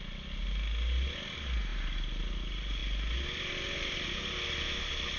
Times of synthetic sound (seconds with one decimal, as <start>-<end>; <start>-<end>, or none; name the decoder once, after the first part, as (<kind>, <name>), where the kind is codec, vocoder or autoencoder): none

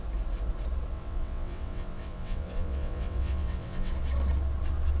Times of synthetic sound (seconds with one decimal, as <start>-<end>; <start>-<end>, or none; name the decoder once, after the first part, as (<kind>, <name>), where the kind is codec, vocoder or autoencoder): 0.9-3.9 (vocoder, WaveNeXt)